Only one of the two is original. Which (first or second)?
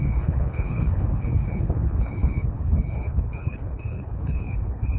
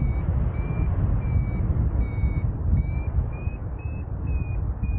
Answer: second